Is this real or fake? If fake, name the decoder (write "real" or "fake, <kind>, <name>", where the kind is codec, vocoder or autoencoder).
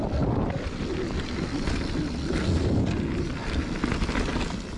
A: real